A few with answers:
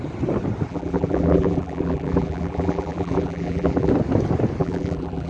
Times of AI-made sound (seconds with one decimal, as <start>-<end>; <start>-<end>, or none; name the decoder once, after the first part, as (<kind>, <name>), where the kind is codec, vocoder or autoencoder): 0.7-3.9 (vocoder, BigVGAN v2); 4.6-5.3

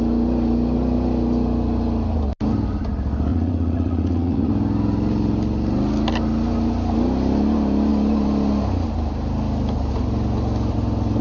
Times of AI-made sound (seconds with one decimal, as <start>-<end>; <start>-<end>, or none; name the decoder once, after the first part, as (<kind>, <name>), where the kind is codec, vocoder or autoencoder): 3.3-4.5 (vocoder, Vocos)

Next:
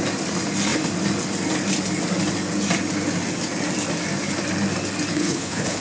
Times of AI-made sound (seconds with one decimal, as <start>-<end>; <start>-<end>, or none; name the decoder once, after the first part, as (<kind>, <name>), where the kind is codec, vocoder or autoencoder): 5.1-5.8 (codec, HILCodec)

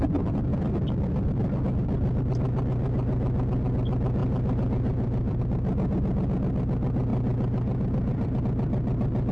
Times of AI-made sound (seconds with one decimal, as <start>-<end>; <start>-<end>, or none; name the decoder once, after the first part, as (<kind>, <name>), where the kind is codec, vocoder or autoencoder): 0.5-2.2 (vocoder, BigVGAN v2); 4.2-5.4; 7.1-8.4